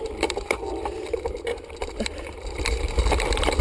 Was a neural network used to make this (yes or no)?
yes